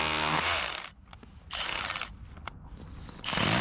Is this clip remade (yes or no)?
no